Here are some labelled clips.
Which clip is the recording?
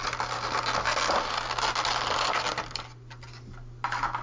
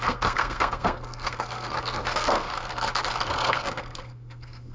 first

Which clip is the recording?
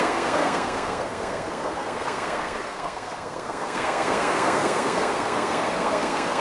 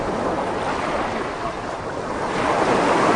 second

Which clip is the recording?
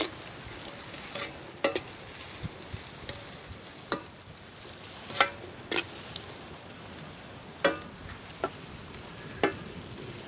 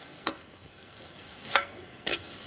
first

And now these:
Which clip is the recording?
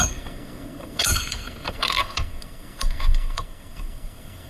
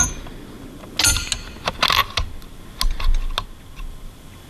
second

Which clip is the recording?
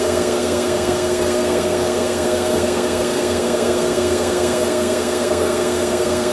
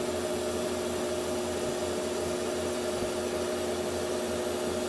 second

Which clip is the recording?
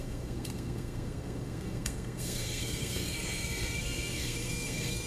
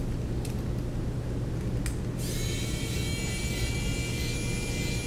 second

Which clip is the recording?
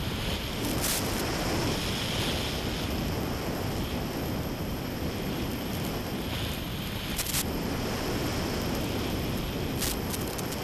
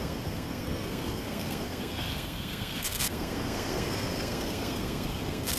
first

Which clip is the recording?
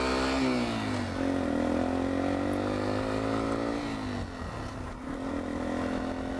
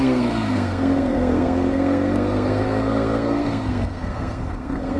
first